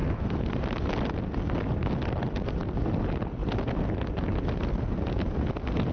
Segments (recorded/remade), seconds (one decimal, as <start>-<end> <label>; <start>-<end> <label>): 0.0-5.9 recorded